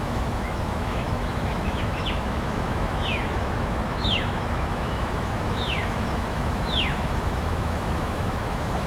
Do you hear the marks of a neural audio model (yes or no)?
yes